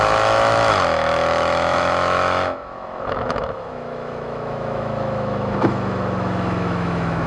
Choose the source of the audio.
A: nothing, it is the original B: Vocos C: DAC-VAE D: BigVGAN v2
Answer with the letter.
C